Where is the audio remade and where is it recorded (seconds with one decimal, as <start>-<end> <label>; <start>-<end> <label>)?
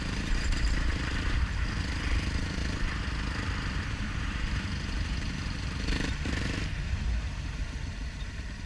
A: 0.0-2.6 remade; 2.6-3.7 recorded; 3.7-8.7 remade